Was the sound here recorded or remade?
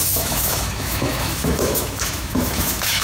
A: remade